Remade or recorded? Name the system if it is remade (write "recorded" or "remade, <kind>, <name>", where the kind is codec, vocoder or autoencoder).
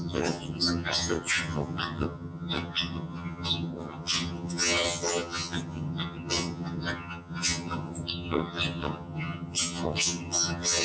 remade, vocoder, HiFi-GAN